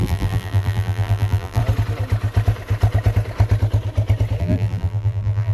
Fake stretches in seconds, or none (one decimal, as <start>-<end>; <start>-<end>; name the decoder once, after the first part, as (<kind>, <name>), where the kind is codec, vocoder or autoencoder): 0.0-1.6 (vocoder, BigVGAN v2); 4.4-5.5